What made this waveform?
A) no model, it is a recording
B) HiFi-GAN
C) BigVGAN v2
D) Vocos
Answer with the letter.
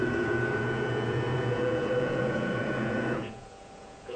D